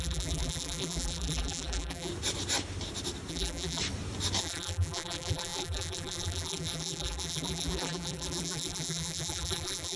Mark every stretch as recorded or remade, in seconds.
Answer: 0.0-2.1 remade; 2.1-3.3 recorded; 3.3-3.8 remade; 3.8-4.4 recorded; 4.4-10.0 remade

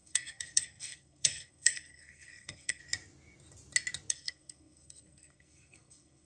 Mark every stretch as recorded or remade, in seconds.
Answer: 0.0-2.8 remade; 2.8-4.1 recorded; 4.1-6.2 remade

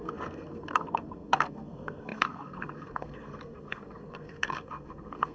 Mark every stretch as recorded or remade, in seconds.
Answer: 0.0-5.3 remade

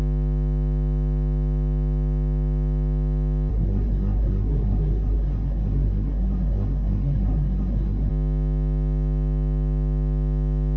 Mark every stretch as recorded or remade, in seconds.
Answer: 0.0-3.5 recorded; 3.5-8.1 remade; 8.1-10.8 recorded

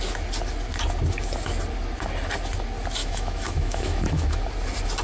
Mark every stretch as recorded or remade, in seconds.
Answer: 0.0-3.0 recorded; 3.0-4.5 remade; 4.5-5.0 recorded

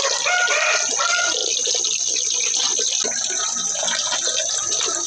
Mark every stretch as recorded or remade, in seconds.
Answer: 0.0-5.1 recorded

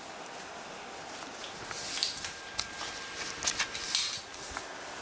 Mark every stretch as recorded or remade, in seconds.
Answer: 0.0-5.0 recorded